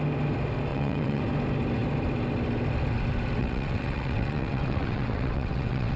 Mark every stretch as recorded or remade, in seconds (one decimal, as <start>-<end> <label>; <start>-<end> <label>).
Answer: 0.0-0.7 recorded; 0.7-1.2 remade; 1.2-3.4 recorded; 3.4-6.0 remade